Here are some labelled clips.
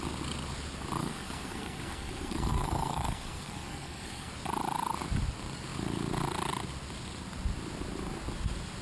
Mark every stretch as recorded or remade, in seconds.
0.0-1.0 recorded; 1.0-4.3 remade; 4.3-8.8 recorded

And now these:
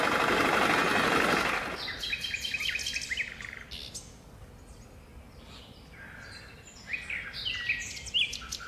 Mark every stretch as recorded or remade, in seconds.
0.0-8.7 recorded